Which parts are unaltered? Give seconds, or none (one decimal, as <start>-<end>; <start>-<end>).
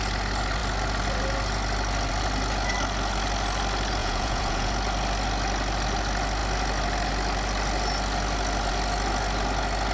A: 0.0-4.0; 4.7-9.9